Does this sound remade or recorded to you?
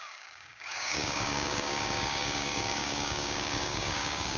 remade